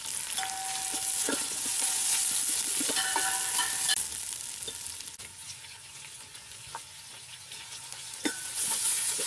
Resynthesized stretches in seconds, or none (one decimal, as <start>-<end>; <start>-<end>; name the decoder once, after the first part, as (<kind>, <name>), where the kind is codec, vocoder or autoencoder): 1.2-2.2 (vocoder, Vocos); 5.3-9.3